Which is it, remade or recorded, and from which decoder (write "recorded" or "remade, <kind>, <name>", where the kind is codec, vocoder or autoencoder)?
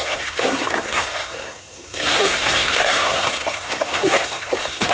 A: remade, codec, SNAC